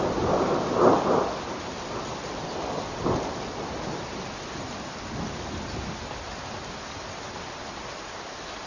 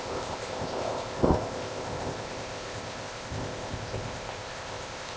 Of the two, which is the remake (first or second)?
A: second